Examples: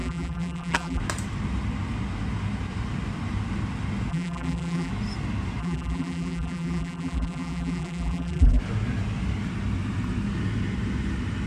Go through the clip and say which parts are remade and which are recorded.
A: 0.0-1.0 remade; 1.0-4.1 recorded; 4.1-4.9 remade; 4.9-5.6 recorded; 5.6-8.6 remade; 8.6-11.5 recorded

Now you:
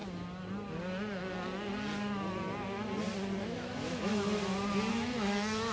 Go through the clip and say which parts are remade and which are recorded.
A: 0.0-3.4 recorded; 3.4-4.4 remade; 4.4-4.9 recorded; 4.9-5.7 remade